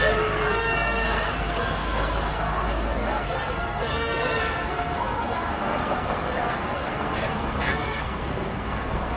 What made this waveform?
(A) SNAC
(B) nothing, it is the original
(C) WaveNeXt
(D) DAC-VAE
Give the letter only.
A